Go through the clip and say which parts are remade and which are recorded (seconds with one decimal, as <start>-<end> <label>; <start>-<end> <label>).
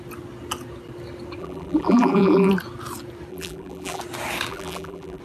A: 0.0-1.4 recorded; 1.4-2.5 remade; 2.5-3.3 recorded; 3.3-4.0 remade; 4.0-4.5 recorded; 4.5-5.2 remade